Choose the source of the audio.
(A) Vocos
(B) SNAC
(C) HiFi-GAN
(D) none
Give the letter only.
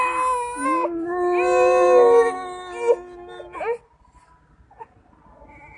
D